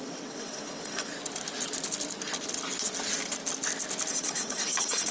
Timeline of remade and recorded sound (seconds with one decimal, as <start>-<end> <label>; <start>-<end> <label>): 0.0-1.1 remade; 1.1-4.1 recorded; 4.1-5.1 remade